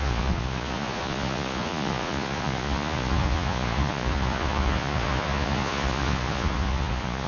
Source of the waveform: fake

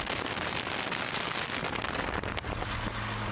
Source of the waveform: real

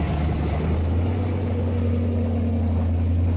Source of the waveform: real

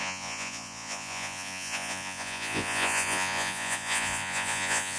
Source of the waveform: fake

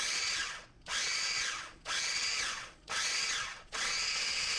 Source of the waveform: fake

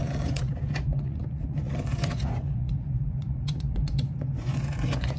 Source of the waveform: fake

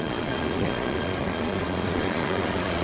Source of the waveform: fake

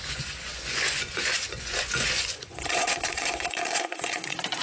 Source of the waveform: fake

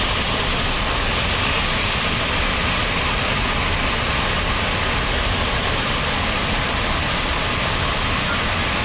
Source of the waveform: real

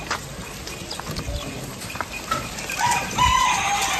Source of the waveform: real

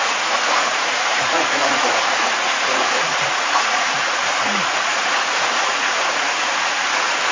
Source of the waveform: fake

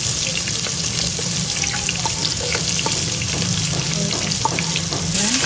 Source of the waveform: real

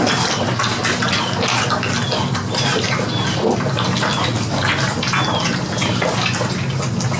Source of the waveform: real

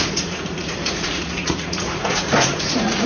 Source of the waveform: fake